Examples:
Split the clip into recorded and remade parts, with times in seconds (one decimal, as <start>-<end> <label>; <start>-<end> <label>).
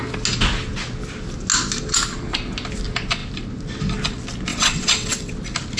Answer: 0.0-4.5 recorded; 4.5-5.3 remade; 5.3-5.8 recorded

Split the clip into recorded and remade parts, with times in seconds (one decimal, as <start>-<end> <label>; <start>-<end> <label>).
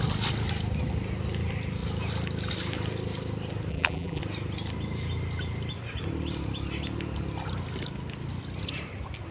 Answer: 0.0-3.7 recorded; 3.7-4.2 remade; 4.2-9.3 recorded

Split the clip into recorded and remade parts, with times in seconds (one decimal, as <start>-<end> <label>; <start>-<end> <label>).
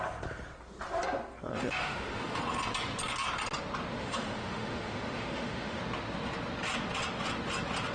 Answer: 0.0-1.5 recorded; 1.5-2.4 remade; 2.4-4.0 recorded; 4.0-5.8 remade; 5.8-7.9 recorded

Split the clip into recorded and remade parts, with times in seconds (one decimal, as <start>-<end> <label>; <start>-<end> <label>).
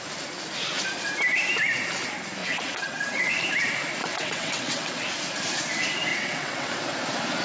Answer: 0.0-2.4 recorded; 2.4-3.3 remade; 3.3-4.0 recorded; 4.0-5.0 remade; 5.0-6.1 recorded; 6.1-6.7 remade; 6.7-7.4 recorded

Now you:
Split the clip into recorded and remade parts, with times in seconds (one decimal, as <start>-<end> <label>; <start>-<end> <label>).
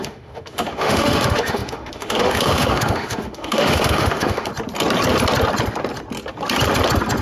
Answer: 0.0-4.5 remade; 4.5-7.2 recorded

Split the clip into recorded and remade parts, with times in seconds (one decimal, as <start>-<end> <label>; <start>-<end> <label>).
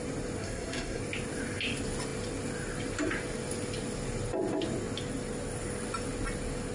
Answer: 0.0-0.4 recorded; 0.4-1.0 remade; 1.0-6.7 recorded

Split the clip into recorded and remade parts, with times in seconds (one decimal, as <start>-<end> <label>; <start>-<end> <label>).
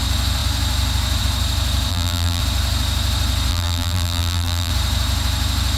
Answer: 0.0-1.9 recorded; 1.9-2.4 remade; 2.4-3.5 recorded; 3.5-4.7 remade; 4.7-5.8 recorded